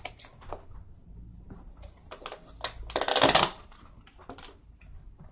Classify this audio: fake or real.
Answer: real